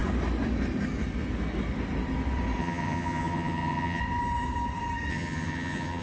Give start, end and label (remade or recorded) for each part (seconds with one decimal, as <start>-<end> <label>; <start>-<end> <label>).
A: 0.0-2.6 recorded; 2.6-4.0 remade; 4.0-5.1 recorded; 5.1-6.0 remade